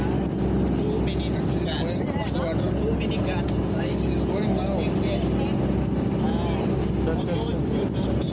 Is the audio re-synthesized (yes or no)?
no